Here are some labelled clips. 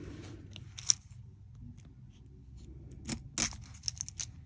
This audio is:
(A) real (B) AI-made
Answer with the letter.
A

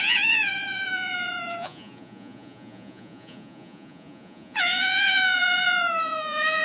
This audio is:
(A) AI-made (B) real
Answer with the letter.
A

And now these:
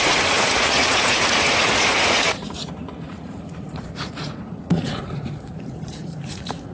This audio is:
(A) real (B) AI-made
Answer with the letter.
B